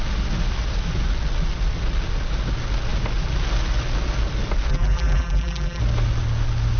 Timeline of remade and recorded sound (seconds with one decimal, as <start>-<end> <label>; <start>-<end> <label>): 0.0-4.7 recorded; 4.7-5.8 remade; 5.8-6.8 recorded